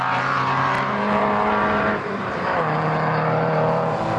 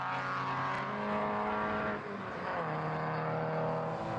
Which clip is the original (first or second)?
second